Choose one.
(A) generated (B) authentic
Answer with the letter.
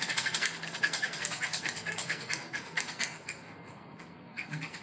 A